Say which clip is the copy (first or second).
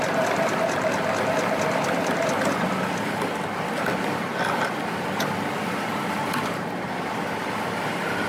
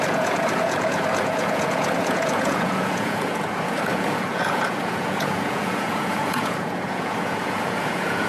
second